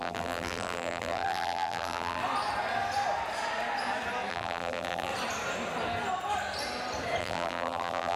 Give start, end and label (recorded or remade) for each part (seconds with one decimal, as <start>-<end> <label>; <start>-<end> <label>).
0.0-2.2 remade; 2.2-4.3 recorded; 4.3-5.1 remade; 5.1-7.2 recorded; 7.2-8.2 remade